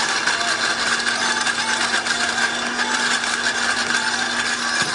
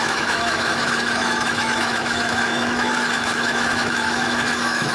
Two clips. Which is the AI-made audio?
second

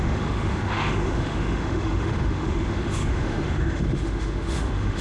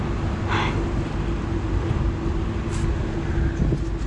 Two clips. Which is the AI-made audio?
first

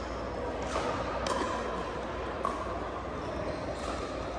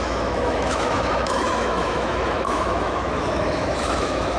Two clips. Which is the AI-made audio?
second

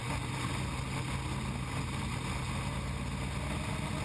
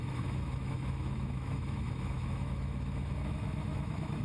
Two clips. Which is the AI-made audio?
second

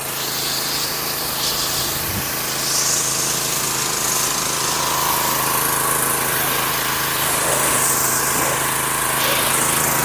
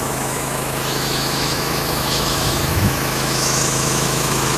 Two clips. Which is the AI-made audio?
second